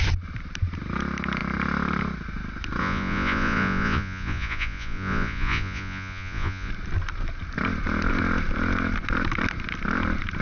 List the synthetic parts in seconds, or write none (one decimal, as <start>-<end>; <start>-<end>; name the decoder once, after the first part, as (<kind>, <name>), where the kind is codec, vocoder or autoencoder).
2.8-6.7 (vocoder, Vocos)